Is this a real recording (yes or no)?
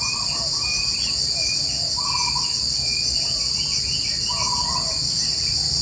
yes